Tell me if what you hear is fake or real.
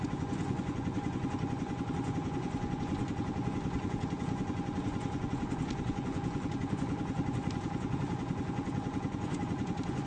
fake